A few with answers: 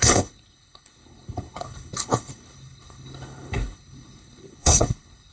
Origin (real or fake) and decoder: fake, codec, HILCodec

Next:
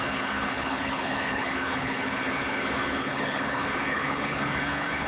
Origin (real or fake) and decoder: fake, codec, HILCodec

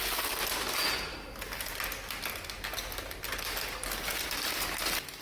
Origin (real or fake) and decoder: real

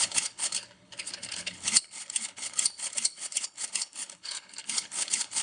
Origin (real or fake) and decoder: fake, codec, HILCodec